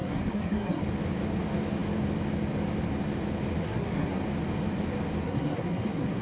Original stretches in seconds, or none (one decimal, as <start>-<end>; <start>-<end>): 0.8-3.6; 4.2-5.2